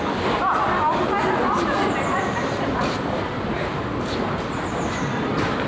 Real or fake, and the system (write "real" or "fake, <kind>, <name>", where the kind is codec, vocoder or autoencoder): real